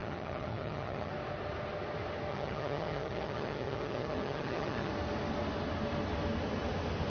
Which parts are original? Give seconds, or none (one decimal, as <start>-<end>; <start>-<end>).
1.1-2.3; 4.9-7.1